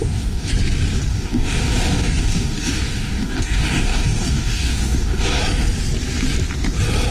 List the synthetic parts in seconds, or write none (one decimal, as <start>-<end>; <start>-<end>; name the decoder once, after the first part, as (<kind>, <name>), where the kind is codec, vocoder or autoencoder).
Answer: 0.0-0.5 (codec, DAC); 1.1-5.4